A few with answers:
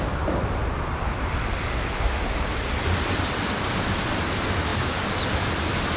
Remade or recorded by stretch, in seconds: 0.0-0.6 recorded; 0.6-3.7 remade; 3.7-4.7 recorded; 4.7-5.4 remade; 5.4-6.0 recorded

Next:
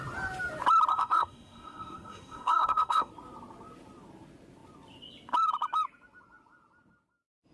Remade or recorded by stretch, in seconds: 0.0-0.9 recorded; 0.9-3.1 remade; 3.1-7.5 recorded

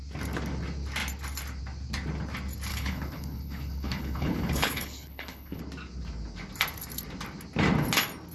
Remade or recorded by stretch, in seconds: 0.0-2.7 recorded; 2.7-5.6 remade; 5.6-8.3 recorded